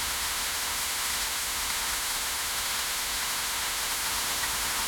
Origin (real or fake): fake